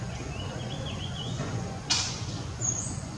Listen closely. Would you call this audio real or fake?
fake